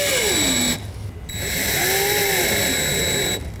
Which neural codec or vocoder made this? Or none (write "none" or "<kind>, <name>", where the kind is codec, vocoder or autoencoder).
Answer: none